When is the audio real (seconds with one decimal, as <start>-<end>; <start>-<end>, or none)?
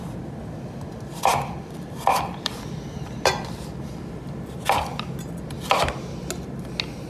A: 0.0-1.3; 3.9-7.1